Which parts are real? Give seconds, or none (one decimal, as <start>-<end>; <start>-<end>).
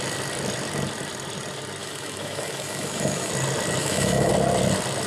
0.0-1.8; 3.3-3.8; 4.3-5.1